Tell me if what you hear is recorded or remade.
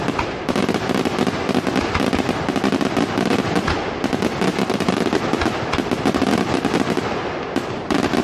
recorded